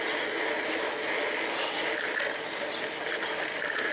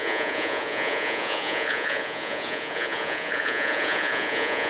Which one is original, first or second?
first